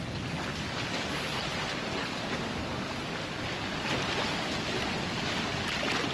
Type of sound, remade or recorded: recorded